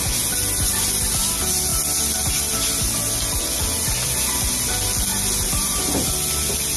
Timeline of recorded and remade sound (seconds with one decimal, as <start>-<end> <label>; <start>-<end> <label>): 0.0-5.1 recorded; 5.1-6.1 remade; 6.1-6.8 recorded